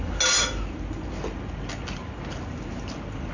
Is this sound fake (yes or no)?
no